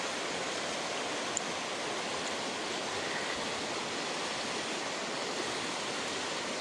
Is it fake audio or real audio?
real